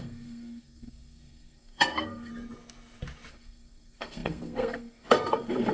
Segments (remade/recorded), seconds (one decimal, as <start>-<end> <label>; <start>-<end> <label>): 0.0-2.3 remade; 2.3-3.3 recorded; 3.3-5.7 remade

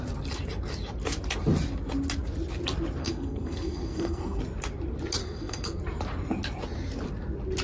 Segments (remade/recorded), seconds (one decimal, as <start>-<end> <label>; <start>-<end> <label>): 0.0-3.0 recorded; 3.0-4.4 remade; 4.4-5.2 recorded; 5.2-5.8 remade; 5.8-7.6 recorded

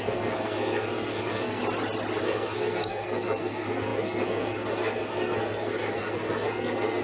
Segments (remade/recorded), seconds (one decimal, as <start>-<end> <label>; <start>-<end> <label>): 0.0-1.6 remade; 1.6-2.2 recorded; 2.2-7.0 remade

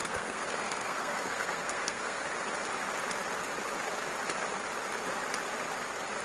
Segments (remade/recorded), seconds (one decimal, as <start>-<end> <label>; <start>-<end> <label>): 0.0-2.2 remade; 2.2-6.2 recorded

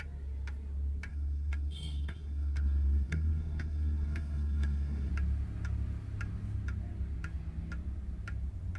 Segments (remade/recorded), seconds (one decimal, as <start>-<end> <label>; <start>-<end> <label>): 0.0-1.1 recorded; 1.1-5.1 remade; 5.1-8.8 recorded

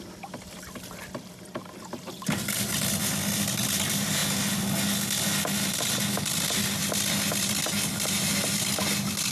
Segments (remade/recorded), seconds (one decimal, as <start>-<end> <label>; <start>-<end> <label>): 0.0-9.3 recorded

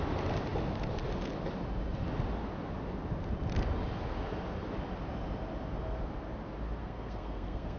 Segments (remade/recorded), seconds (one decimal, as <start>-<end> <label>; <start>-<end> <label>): 0.0-6.8 recorded; 6.8-7.8 remade